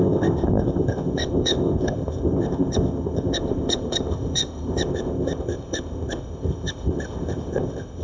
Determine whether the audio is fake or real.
fake